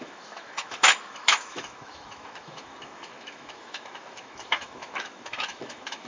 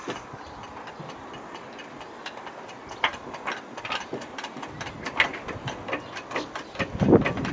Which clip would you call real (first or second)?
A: second